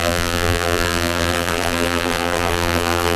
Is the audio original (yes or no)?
no